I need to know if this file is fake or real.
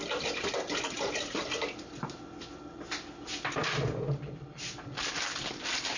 fake